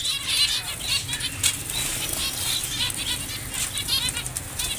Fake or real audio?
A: real